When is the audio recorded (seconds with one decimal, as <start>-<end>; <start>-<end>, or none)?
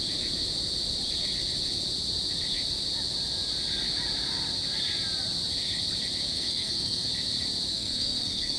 0.0-6.3; 7.1-7.7